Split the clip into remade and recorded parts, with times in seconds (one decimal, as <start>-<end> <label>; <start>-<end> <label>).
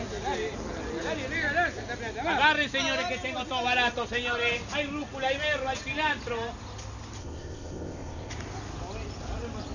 0.0-7.2 recorded; 7.2-8.3 remade; 8.3-9.7 recorded